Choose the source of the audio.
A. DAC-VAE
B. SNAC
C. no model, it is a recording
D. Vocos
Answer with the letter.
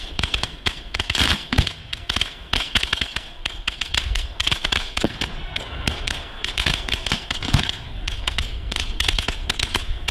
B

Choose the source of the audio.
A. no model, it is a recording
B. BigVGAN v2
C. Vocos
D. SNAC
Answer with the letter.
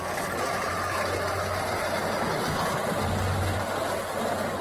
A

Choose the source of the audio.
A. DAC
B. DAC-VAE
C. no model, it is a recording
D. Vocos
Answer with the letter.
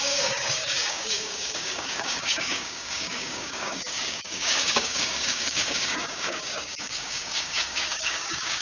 A